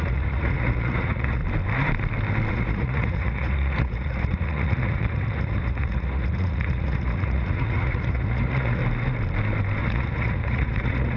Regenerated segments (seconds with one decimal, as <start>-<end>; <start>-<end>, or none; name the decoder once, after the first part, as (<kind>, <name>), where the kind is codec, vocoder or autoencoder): 0.0-1.4 (vocoder, Vocos); 2.5-8.8; 9.8-11.2